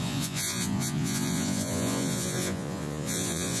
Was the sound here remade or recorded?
remade